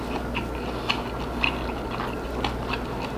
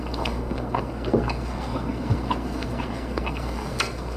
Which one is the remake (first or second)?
second